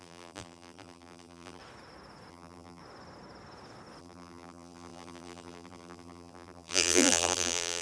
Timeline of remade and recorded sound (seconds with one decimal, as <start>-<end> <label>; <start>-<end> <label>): 0.0-1.6 remade; 1.6-2.3 recorded; 2.3-2.8 remade; 2.8-4.0 recorded; 4.0-7.8 remade